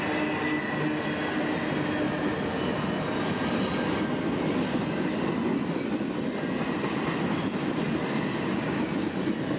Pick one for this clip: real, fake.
real